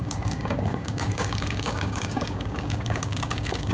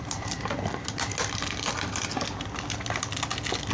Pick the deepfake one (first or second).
first